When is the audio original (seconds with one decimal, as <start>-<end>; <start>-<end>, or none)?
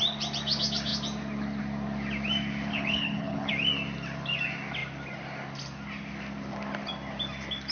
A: 0.0-2.7; 3.5-7.7